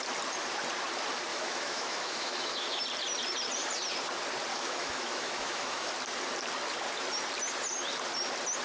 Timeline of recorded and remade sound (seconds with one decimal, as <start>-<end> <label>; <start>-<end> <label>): 0.0-1.3 recorded; 1.3-2.8 remade; 2.8-4.5 recorded; 4.5-5.9 remade; 5.9-8.6 recorded